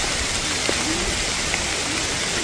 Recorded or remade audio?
recorded